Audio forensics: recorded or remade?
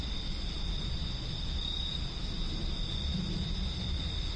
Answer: recorded